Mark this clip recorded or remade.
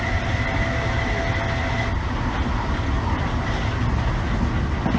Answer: recorded